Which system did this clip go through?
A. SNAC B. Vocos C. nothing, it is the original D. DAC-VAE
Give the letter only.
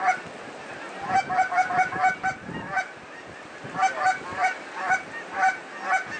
C